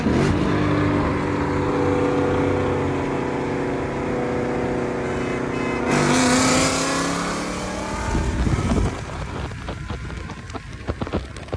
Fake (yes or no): no